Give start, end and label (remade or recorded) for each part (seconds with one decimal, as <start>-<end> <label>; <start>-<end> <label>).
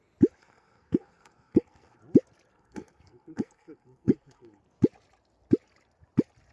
0.0-0.4 recorded; 0.4-2.0 remade; 2.0-2.5 recorded; 2.5-4.6 remade; 4.6-6.5 recorded